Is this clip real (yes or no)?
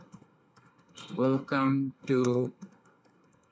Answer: no